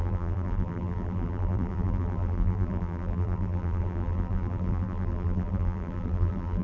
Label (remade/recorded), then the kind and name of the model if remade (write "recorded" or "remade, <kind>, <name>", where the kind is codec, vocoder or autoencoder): remade, vocoder, BigVGAN v2